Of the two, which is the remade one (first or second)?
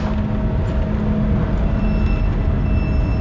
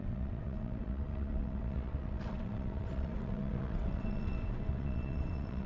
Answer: second